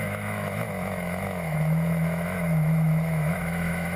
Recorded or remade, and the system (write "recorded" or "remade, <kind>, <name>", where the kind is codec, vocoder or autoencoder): remade, autoencoder, DAC-VAE